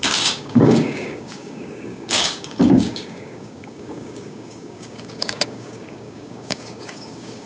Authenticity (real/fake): fake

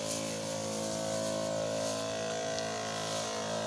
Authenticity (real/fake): real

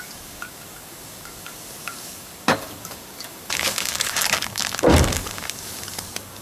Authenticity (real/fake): fake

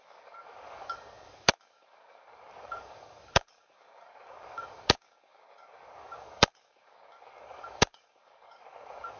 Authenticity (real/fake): fake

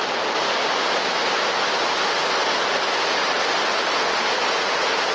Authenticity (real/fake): real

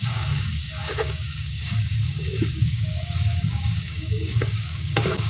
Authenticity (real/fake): fake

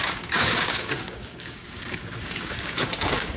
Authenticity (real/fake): fake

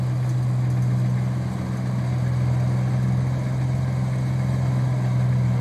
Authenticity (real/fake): real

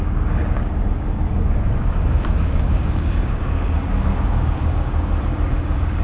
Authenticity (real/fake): fake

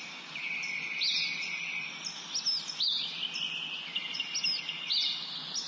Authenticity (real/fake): real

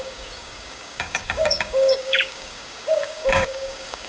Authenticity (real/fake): fake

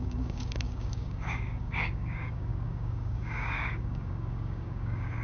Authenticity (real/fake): fake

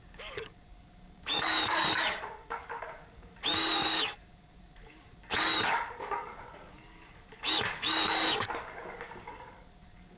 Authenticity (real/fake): fake